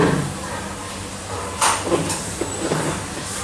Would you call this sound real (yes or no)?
yes